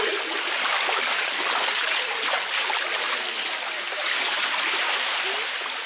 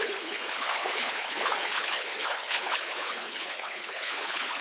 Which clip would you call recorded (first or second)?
first